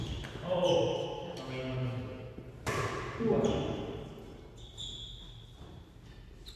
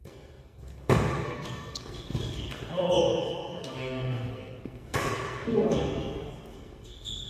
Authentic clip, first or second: first